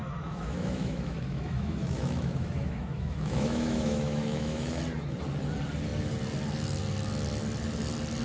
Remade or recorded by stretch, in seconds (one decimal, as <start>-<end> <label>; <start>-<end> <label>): 0.0-4.8 remade; 4.8-8.2 recorded

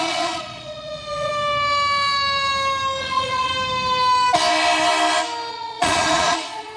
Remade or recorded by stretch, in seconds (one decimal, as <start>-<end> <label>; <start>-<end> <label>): 0.0-1.3 remade; 1.3-3.0 recorded; 3.0-3.5 remade; 3.5-5.5 recorded; 5.5-6.8 remade

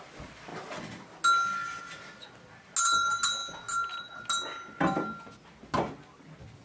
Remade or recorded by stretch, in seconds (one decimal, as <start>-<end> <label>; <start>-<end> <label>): 0.0-6.6 recorded

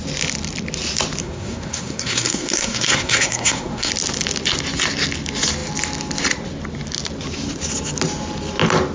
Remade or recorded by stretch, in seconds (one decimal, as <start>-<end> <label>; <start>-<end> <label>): 0.0-1.2 recorded; 1.2-3.9 remade; 3.9-8.9 recorded

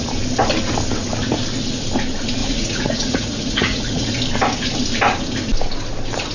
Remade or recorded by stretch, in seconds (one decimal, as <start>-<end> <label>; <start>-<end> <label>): 0.0-2.4 recorded; 2.4-4.1 remade; 4.1-6.3 recorded

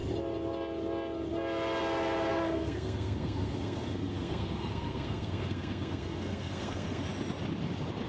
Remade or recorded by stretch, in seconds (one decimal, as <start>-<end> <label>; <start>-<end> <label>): 0.0-2.3 recorded; 2.3-7.0 remade; 7.0-8.1 recorded

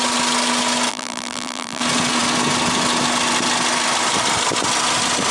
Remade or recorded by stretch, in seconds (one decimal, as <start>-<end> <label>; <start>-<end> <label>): 0.0-0.9 recorded; 0.9-1.8 remade; 1.8-5.3 recorded

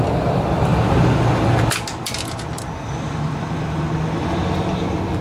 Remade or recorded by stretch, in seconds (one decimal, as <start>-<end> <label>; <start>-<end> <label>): 0.0-0.7 recorded; 0.7-3.8 remade; 3.8-5.2 recorded